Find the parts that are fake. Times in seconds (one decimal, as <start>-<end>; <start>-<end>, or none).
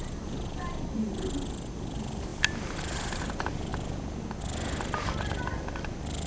none